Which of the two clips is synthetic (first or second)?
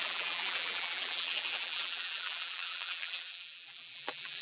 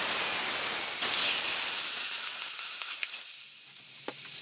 first